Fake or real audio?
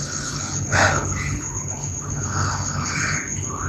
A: fake